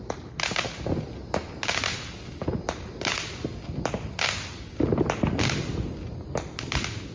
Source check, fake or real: real